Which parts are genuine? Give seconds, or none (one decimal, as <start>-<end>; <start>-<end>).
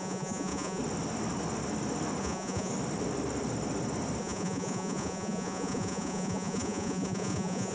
0.8-2.2; 2.7-4.2